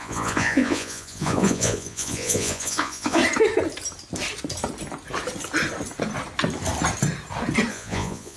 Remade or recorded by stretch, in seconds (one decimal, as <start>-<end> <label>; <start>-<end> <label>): 0.0-3.2 remade; 3.2-7.7 recorded; 7.7-8.4 remade